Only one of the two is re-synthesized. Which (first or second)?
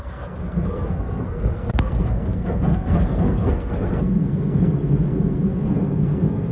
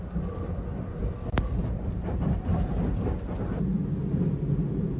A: first